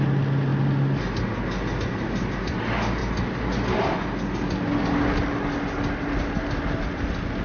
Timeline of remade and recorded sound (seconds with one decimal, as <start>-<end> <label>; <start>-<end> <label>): 0.0-7.4 recorded